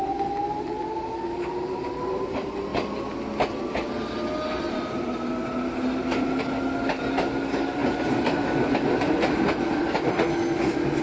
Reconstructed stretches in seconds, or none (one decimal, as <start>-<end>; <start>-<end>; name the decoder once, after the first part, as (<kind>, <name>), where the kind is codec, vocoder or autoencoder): none